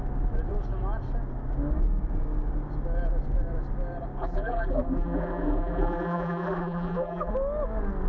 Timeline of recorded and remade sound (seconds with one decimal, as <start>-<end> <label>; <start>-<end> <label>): 0.0-4.2 recorded; 4.2-7.3 remade; 7.3-8.1 recorded